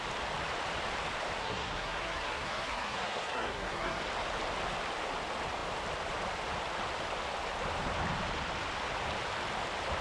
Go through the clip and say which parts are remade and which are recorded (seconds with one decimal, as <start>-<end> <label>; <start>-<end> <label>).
0.0-1.4 recorded; 1.4-4.0 remade; 4.0-10.0 recorded